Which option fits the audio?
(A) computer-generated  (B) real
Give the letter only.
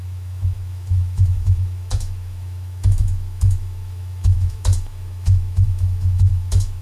A